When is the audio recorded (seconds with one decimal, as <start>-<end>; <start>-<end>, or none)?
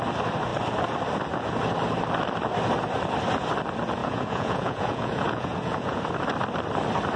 0.0-4.0; 6.0-7.2